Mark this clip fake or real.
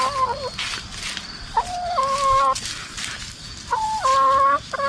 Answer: real